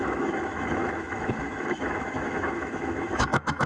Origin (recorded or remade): remade